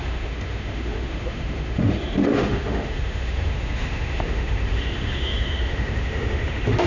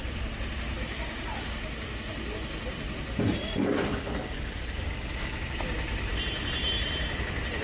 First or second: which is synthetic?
first